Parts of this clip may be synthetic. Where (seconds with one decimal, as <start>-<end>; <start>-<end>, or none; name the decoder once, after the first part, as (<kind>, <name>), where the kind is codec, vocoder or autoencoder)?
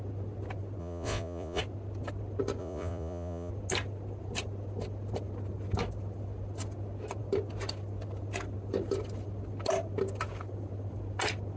0.8-1.6 (vocoder, Vocos); 2.6-3.5